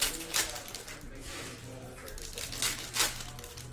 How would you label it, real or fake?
real